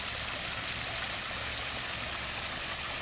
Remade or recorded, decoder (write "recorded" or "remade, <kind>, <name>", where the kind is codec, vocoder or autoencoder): recorded